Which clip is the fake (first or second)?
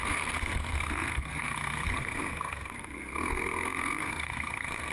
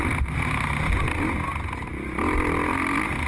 first